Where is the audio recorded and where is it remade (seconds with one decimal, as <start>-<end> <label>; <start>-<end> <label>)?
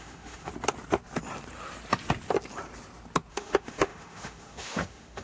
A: 0.0-0.5 remade; 0.5-3.3 recorded; 3.3-5.2 remade